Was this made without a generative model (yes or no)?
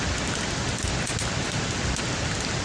yes